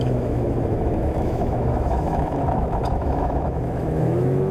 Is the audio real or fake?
fake